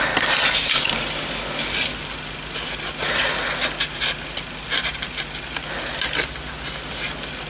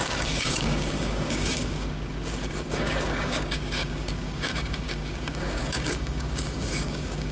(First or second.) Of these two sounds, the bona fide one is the first